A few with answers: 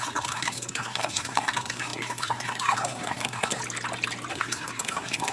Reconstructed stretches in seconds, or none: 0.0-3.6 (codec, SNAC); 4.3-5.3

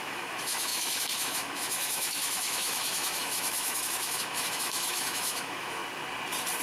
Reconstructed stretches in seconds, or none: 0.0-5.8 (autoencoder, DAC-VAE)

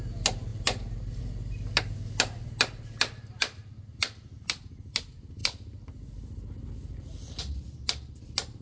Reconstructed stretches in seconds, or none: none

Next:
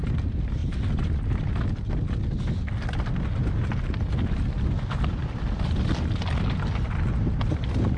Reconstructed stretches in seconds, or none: none

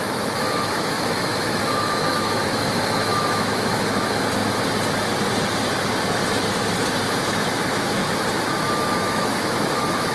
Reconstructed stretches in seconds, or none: 0.0-4.4 (autoencoder, DAC-VAE); 7.1-8.0; 8.6-10.1